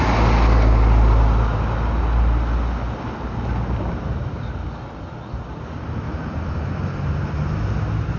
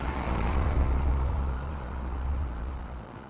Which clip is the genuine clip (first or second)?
first